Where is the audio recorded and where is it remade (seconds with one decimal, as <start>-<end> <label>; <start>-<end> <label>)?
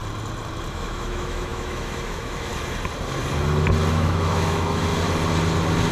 0.0-0.7 recorded; 0.7-2.5 remade; 2.5-3.9 recorded; 3.9-4.9 remade; 4.9-5.9 recorded